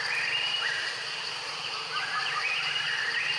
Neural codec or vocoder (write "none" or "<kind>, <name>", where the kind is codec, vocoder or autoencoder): vocoder, BigVGAN v2